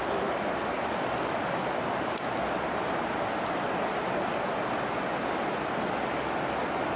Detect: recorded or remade recorded